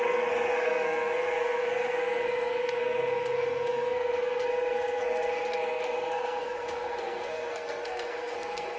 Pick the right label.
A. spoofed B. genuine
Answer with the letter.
A